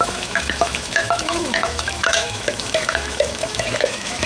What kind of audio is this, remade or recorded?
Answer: remade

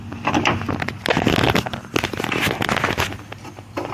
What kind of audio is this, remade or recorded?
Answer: recorded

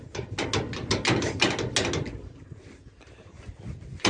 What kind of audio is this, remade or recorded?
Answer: recorded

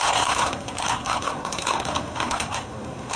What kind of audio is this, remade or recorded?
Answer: remade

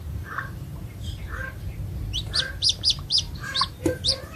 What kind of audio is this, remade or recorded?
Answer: remade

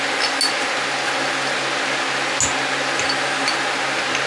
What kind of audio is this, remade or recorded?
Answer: recorded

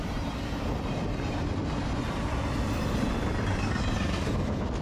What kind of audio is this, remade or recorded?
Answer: recorded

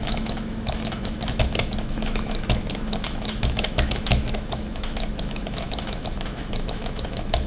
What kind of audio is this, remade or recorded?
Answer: remade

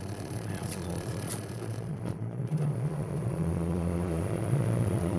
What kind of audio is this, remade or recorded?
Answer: remade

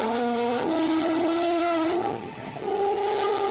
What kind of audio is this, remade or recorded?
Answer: remade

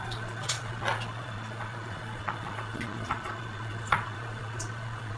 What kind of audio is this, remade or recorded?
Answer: remade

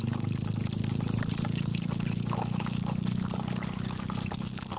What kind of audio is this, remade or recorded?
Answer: recorded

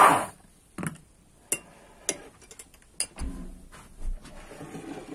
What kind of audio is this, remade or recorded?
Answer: recorded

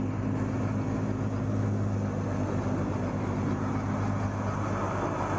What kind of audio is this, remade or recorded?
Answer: recorded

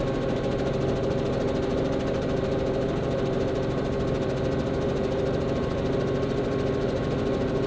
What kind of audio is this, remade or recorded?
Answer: recorded